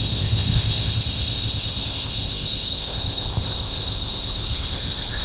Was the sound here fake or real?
fake